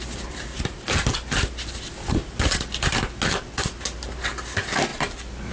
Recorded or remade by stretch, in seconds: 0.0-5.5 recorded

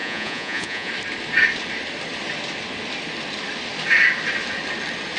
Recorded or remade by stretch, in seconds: 0.0-0.9 remade; 0.9-5.2 recorded